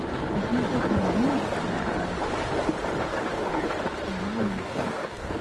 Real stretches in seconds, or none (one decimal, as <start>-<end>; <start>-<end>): 0.0-3.1; 3.7-4.2